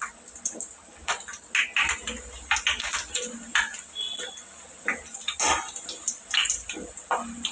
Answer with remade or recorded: recorded